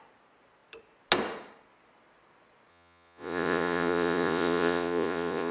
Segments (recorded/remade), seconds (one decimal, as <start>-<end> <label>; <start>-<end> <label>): 0.0-2.7 recorded; 2.7-5.5 remade